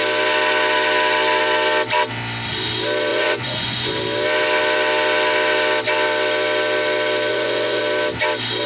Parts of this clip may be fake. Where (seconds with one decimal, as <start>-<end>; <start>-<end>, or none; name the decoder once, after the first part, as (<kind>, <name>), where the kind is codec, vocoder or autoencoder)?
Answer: 3.1-3.9 (vocoder, Vocos); 7.3-7.8